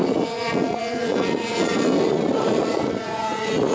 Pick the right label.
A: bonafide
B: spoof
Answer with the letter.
B